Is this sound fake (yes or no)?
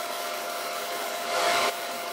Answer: yes